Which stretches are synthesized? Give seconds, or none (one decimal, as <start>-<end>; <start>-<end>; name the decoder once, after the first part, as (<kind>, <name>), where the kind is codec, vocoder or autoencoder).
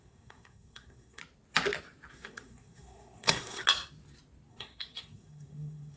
0.0-1.2 (codec, SNAC); 2.1-3.6; 4.5-6.0